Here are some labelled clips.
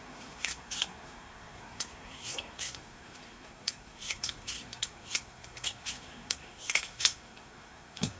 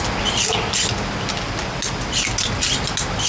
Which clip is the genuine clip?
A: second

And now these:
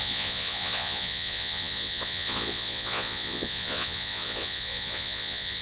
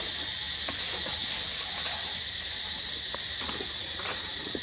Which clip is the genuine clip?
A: second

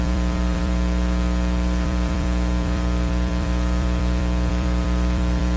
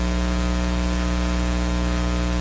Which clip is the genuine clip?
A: second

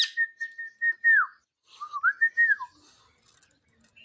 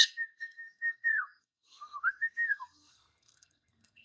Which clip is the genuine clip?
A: first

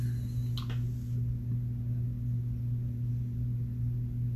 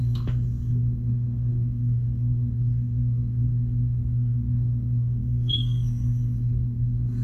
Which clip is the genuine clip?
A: first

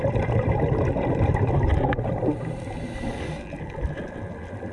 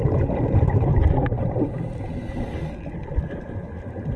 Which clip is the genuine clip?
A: first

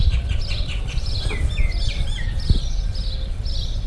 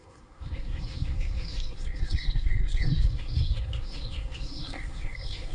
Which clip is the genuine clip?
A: first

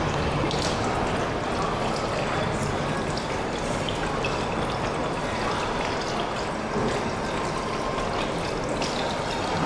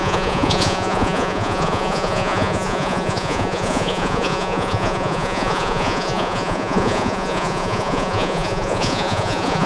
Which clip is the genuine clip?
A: first